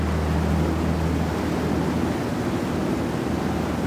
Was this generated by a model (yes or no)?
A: no